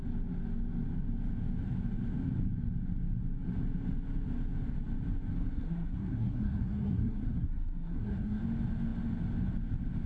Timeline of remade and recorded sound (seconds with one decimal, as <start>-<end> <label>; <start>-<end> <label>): 0.0-5.4 recorded; 5.4-8.4 remade; 8.4-10.1 recorded